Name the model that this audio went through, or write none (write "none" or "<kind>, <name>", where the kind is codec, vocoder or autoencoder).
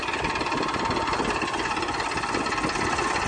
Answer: none